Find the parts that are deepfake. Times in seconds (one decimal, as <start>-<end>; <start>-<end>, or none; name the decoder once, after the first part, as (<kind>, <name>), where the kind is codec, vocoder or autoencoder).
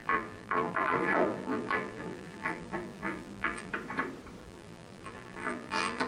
0.0-3.7 (vocoder, BigVGAN v2); 4.4-6.1